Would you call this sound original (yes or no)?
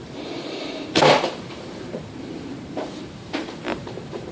no